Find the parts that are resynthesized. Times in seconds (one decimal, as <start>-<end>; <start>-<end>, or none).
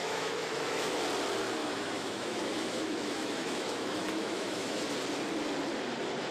0.0-1.0; 1.6-4.8